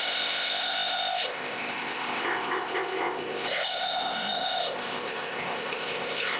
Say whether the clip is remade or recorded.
remade